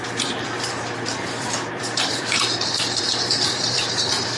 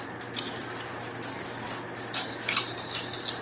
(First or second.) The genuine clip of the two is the second